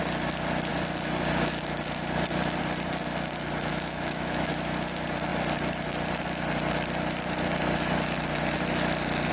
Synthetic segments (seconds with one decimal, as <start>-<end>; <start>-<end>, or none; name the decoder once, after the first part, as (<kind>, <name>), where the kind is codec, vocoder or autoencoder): 3.7-4.5 (autoencoder, DAC-VAE)